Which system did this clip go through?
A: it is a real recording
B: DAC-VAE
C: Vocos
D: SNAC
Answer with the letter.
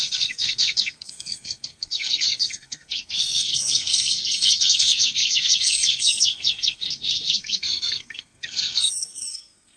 D